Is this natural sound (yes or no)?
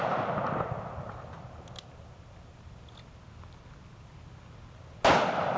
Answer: yes